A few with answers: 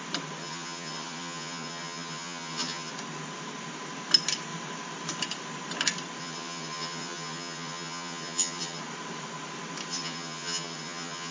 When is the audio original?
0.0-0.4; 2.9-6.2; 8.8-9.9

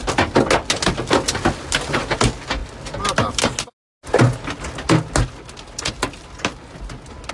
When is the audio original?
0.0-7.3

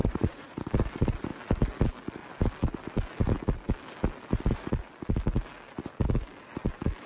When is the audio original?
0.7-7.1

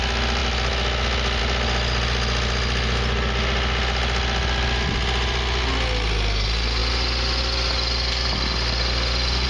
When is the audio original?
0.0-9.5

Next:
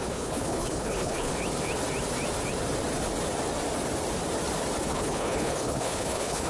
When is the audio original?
1.3-4.8